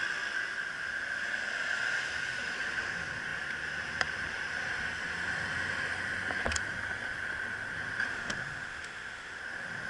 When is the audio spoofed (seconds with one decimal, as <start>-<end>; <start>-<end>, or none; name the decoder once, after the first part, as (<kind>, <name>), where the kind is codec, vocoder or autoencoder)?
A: 8.1-9.4 (autoencoder, DAC-VAE)